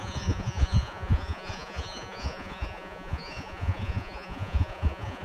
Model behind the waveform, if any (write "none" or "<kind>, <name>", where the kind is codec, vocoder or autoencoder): vocoder, Vocos